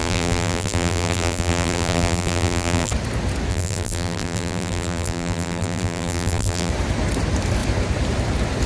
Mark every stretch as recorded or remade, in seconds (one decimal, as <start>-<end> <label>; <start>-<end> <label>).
0.0-2.9 remade; 2.9-3.5 recorded; 3.5-6.7 remade; 6.7-8.7 recorded